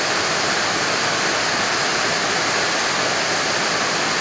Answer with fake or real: real